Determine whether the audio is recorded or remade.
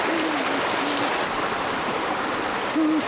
recorded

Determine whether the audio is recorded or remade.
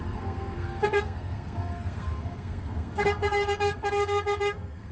remade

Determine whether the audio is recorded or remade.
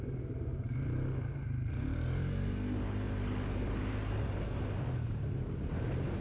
recorded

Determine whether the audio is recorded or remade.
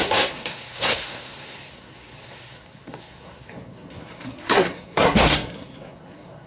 remade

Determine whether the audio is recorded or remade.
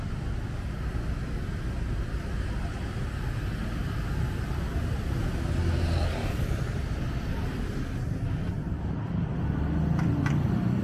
recorded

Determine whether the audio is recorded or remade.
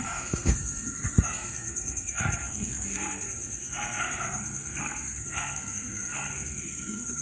remade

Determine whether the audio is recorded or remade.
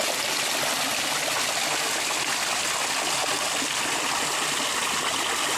recorded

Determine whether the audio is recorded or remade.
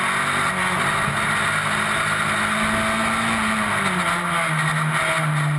recorded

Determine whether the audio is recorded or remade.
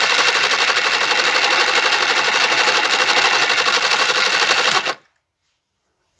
recorded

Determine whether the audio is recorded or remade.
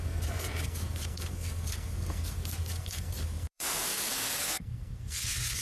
remade